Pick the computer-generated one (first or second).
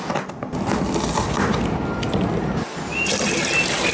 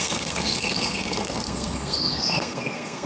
second